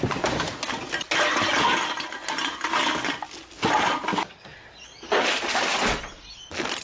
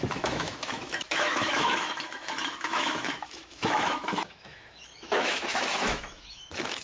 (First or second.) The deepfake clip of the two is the second